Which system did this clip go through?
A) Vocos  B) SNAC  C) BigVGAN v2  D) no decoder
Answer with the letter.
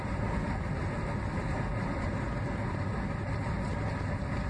D